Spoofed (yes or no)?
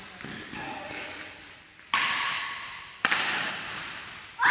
no